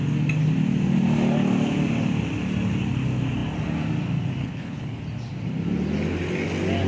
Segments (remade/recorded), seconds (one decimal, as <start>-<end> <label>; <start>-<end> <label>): 0.0-4.4 recorded; 4.4-5.0 remade; 5.0-6.9 recorded